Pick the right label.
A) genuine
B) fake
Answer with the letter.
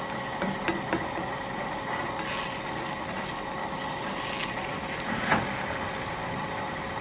A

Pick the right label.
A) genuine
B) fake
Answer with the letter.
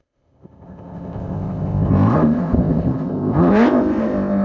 B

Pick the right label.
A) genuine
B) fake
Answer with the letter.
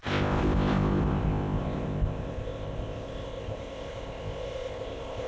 B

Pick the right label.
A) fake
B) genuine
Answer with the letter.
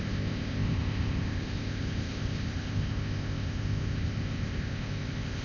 A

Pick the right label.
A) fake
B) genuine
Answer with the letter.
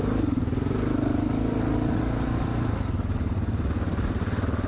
B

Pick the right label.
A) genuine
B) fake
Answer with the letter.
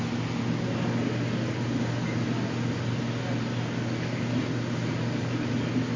A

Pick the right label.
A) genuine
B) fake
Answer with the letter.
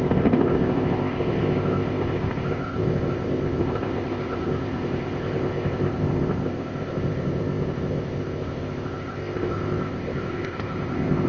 B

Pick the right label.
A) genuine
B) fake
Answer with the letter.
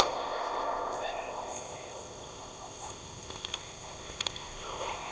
B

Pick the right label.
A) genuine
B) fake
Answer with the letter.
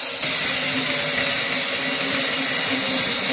A